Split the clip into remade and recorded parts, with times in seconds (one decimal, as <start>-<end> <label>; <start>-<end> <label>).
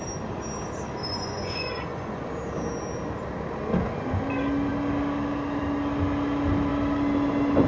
0.0-1.0 recorded; 1.0-2.2 remade; 2.2-7.7 recorded